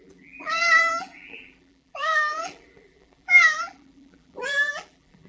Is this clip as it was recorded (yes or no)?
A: no